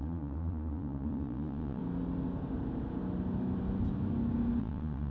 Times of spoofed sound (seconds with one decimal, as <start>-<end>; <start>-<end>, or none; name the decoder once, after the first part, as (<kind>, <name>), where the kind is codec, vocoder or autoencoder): 0.0-1.8 (vocoder, Vocos); 4.6-5.1